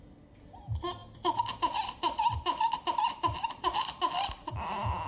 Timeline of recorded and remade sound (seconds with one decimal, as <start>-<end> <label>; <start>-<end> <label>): 0.0-5.1 recorded